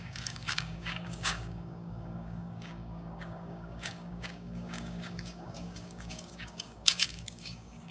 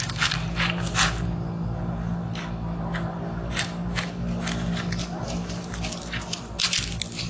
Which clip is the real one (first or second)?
second